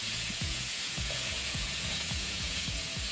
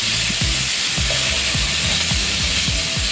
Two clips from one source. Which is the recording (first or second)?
second